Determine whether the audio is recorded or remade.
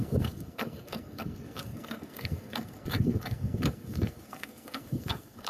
remade